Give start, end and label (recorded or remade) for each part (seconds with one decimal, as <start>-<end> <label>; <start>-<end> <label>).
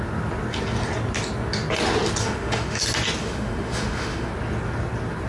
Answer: 0.0-2.2 recorded; 2.2-2.8 remade; 2.8-3.2 recorded; 3.2-4.3 remade; 4.3-5.3 recorded